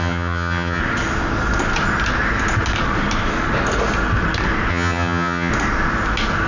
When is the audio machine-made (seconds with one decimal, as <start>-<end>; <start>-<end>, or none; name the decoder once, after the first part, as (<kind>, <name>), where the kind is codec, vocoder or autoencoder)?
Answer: 0.0-0.8 (vocoder, HiFi-GAN); 4.7-5.5